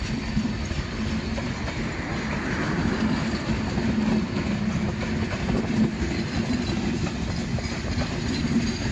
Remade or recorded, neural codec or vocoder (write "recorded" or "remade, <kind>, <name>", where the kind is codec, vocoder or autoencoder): recorded